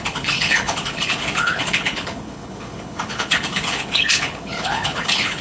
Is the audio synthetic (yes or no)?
yes